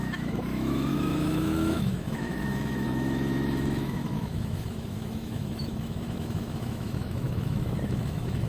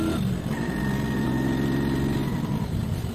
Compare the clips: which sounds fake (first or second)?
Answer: first